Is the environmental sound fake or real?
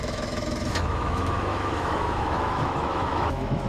fake